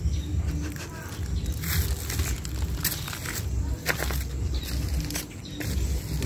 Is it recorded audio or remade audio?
recorded